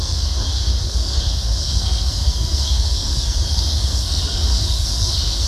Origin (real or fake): fake